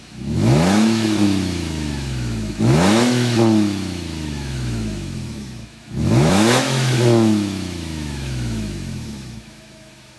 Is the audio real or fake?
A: fake